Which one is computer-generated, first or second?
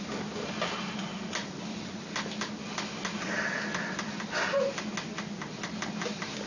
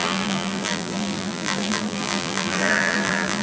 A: second